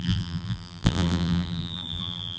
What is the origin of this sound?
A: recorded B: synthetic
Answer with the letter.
B